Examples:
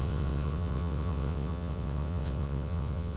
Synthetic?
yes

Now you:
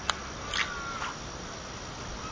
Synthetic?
no